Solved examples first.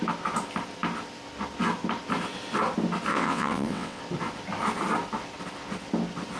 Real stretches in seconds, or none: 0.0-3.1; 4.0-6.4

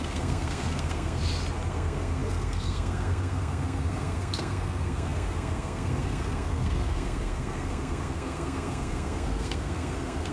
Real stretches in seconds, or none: 1.2-1.7

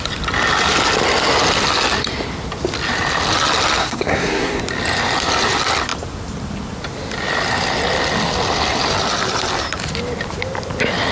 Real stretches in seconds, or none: 0.0-3.8; 4.6-11.1

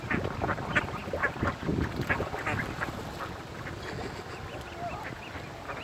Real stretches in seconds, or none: 0.0-5.8